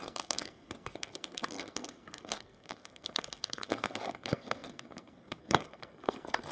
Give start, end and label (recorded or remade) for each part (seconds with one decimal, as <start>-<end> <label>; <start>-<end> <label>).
0.0-6.5 remade